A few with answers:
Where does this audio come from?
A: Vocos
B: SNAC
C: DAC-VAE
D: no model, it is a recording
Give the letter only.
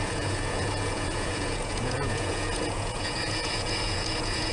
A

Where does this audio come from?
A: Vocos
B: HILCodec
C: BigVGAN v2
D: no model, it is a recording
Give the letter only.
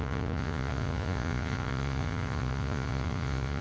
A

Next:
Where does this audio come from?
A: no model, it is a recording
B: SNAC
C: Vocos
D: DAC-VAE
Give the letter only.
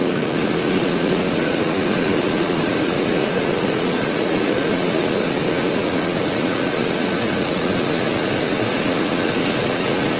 C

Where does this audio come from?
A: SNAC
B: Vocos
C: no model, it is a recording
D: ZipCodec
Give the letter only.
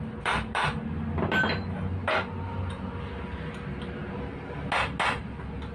C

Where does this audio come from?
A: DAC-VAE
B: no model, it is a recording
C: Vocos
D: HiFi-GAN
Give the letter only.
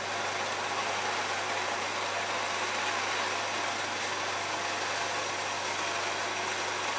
B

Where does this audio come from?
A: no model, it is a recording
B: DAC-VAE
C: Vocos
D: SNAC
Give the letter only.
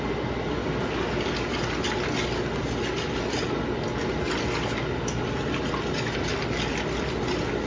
A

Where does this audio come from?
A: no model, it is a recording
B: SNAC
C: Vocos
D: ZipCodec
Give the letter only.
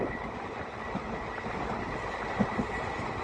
A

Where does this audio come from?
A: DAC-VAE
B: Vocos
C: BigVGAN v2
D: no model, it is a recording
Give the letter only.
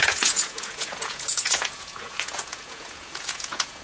B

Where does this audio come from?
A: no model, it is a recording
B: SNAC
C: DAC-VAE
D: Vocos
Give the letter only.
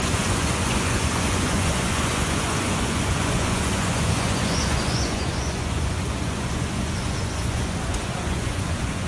D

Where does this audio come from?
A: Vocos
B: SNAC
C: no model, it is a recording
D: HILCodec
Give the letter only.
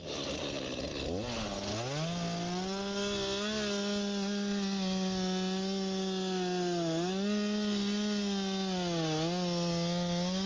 C